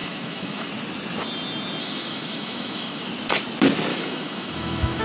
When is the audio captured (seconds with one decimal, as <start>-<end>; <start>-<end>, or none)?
0.7-1.8; 3.1-3.9